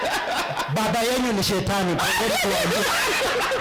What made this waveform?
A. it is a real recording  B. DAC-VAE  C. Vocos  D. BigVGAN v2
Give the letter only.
A